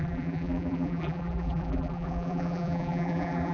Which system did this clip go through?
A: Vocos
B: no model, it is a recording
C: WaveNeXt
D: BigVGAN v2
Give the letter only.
D